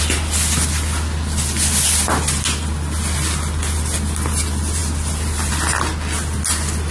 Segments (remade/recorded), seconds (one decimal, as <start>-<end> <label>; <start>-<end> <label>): 0.0-6.9 recorded